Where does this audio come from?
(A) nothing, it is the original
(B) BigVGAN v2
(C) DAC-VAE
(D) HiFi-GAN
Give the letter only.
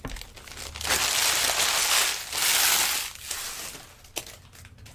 A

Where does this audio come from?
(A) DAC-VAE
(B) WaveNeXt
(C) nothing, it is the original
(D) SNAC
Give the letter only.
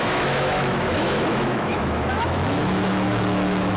A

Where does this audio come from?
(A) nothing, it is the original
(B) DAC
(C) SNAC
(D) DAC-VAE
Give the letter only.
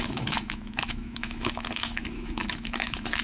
D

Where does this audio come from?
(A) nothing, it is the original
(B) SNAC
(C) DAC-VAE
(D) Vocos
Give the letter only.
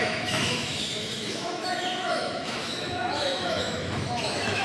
C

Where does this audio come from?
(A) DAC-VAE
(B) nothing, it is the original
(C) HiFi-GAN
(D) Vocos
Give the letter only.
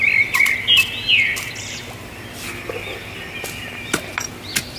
B